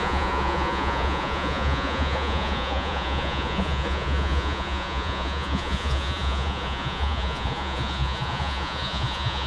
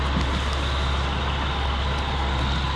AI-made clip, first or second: first